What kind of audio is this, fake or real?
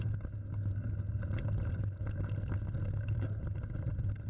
real